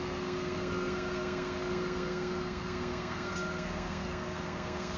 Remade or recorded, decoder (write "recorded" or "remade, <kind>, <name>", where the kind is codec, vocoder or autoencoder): remade, codec, SNAC